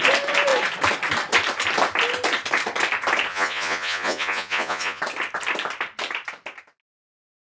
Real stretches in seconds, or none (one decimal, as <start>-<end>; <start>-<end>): 0.0-3.3; 5.0-7.5